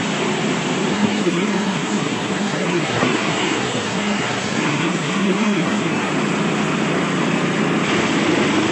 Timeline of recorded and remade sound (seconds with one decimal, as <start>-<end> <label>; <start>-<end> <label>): 0.0-0.9 recorded; 0.9-6.1 remade; 6.1-8.7 recorded